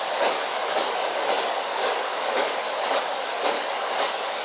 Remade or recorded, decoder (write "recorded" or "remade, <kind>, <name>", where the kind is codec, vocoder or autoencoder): remade, codec, DAC